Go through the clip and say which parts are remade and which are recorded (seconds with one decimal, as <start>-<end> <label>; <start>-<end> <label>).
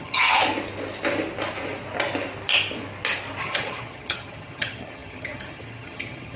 0.0-0.4 remade; 0.4-3.4 recorded; 3.4-6.4 remade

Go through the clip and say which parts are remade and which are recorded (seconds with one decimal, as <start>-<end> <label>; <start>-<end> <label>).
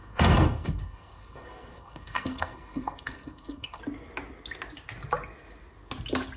0.0-3.8 remade; 3.8-6.4 recorded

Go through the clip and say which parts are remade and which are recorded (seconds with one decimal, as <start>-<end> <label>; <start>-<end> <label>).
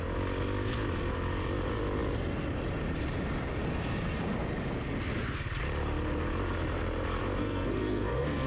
0.0-7.4 recorded; 7.4-8.5 remade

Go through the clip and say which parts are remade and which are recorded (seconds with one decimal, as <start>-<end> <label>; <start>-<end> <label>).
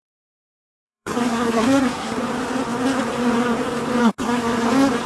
0.0-2.2 remade; 2.2-4.0 recorded; 4.0-4.6 remade; 4.6-5.1 recorded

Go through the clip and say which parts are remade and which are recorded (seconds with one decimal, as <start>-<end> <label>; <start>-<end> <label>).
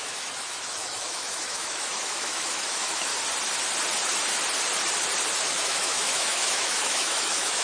0.0-3.1 remade; 3.1-5.5 recorded; 5.5-7.6 remade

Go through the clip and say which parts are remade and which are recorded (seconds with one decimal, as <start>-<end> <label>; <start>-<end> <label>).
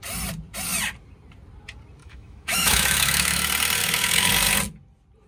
0.0-2.0 recorded; 2.0-3.4 remade; 3.4-3.8 recorded; 3.8-4.3 remade; 4.3-5.3 recorded